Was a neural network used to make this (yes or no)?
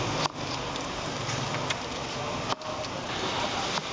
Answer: no